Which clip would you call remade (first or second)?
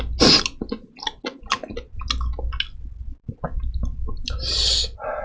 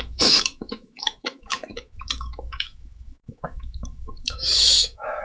second